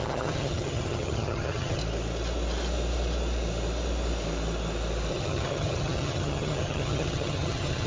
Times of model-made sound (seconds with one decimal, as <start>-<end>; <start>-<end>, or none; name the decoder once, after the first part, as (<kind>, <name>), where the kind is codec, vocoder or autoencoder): 0.0-1.8 (vocoder, HiFi-GAN); 5.1-7.9